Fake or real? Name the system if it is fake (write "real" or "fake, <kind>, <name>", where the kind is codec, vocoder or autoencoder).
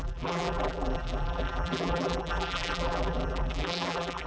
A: fake, vocoder, BigVGAN v2